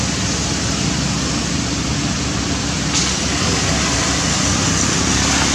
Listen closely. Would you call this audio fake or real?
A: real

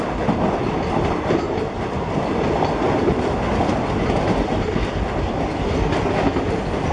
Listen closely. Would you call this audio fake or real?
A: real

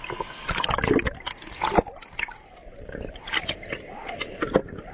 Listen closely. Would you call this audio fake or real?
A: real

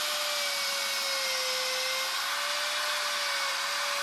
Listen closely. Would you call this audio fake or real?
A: real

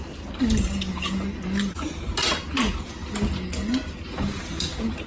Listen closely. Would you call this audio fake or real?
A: real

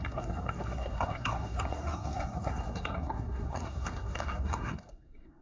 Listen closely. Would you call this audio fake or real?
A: fake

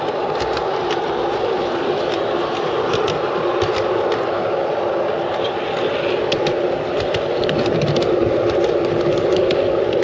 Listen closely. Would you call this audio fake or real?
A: real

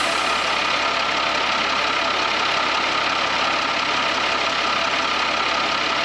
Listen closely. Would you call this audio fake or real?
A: real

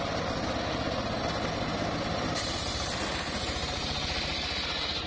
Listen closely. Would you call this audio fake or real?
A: real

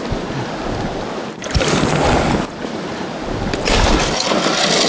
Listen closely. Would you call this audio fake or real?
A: real